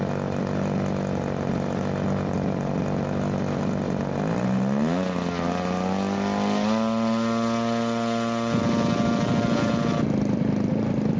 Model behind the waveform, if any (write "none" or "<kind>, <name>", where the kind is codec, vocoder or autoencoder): none